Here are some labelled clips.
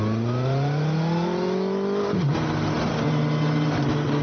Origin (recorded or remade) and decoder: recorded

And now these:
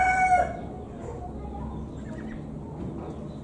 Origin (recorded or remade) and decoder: recorded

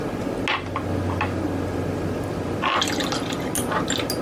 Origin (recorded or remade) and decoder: recorded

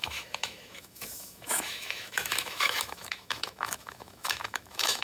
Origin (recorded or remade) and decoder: remade, autoencoder, DAC-VAE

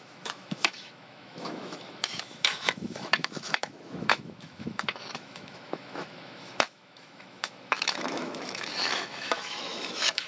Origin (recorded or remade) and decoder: remade, autoencoder, DAC-VAE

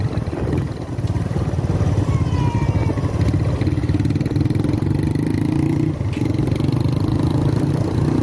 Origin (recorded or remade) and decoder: recorded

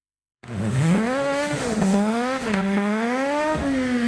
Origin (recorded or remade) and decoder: remade, autoencoder, DAC-VAE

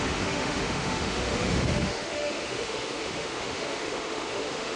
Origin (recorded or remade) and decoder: remade, autoencoder, DAC-VAE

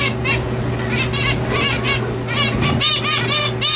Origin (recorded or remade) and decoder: recorded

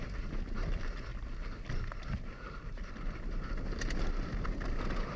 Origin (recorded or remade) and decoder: recorded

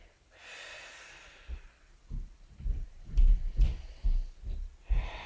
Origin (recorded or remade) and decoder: recorded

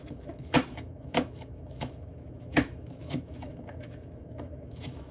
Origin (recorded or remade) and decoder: remade, autoencoder, DAC-VAE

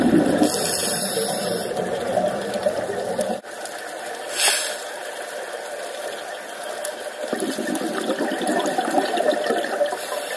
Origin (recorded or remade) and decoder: recorded